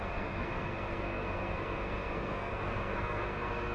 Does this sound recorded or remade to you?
remade